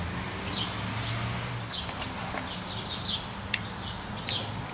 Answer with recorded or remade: recorded